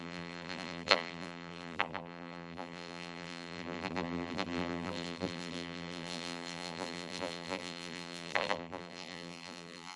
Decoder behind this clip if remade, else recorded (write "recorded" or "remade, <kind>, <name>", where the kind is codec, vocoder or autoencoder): remade, vocoder, BigVGAN v2